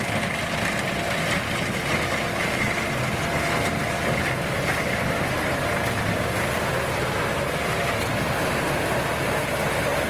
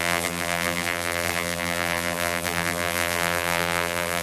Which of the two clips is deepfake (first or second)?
second